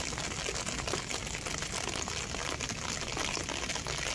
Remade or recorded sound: recorded